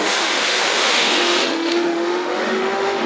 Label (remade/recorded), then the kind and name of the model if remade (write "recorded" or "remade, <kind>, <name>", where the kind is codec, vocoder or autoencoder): remade, autoencoder, DAC-VAE